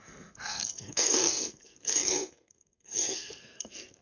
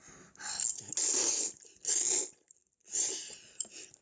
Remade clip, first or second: first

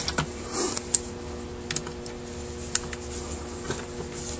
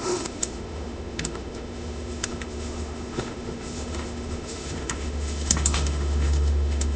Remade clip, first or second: second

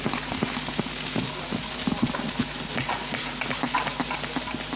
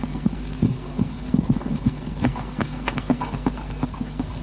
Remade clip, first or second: second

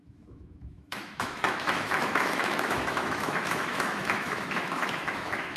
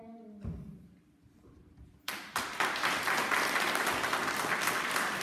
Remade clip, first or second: first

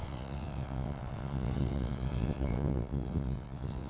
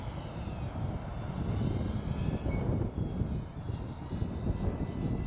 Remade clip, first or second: first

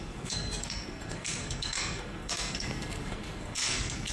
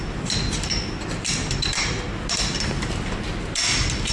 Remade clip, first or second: first